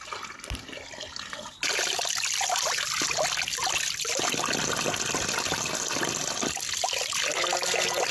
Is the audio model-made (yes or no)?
no